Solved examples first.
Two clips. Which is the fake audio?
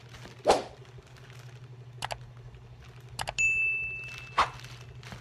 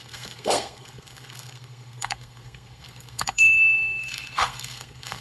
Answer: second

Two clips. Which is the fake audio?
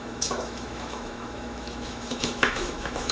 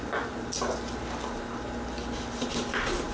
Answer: first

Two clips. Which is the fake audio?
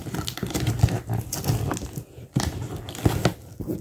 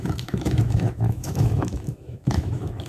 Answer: second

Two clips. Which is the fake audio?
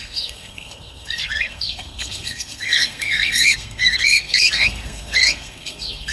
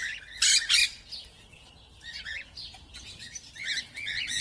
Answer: first